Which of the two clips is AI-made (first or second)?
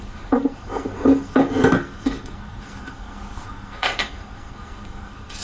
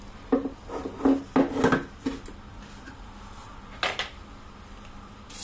first